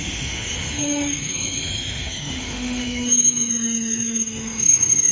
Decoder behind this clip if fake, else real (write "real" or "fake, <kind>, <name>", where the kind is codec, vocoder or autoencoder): fake, autoencoder, DAC-VAE